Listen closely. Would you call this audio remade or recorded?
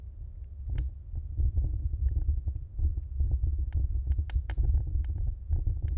recorded